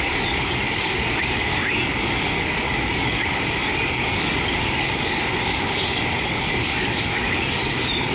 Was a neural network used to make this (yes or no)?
yes